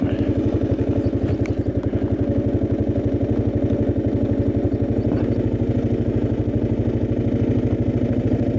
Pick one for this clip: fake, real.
real